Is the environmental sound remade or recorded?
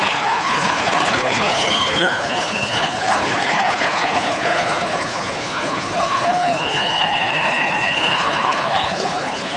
remade